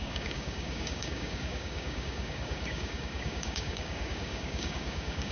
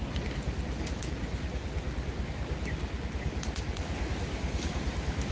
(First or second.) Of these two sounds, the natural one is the second